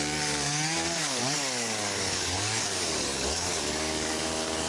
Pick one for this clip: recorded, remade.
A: remade